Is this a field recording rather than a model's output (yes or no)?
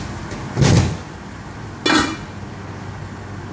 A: yes